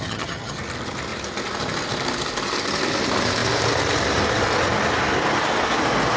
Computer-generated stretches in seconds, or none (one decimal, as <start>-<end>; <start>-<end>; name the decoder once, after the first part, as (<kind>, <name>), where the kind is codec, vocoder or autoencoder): 0.0-0.6 (vocoder, HiFi-GAN)